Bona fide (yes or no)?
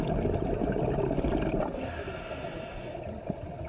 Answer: yes